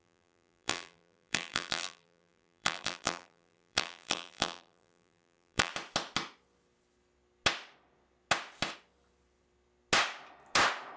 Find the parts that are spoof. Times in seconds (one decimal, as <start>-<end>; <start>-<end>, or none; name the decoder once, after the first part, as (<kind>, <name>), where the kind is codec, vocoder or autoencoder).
0.0-5.7 (vocoder, BigVGAN v2)